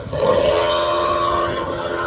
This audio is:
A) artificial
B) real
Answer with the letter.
A